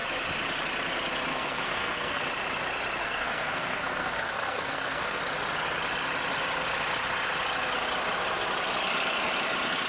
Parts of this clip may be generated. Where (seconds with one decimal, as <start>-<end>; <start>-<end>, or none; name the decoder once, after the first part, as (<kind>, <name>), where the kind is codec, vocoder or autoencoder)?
1.3-2.2 (codec, SNAC); 3.0-5.2